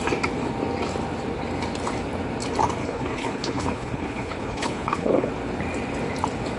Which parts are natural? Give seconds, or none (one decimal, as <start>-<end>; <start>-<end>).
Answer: 0.0-2.8; 5.3-6.6